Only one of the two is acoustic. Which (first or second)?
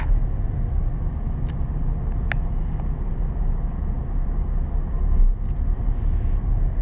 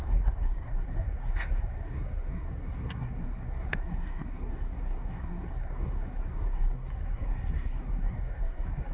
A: first